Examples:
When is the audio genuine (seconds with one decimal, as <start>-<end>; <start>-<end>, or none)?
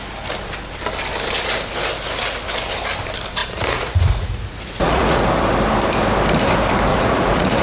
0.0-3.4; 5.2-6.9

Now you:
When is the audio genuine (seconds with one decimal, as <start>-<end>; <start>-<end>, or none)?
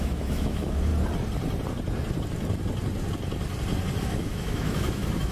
0.9-4.0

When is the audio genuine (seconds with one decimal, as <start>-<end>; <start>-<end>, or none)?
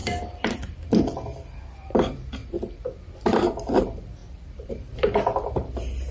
none